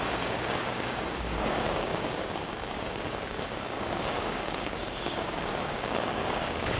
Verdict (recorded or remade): remade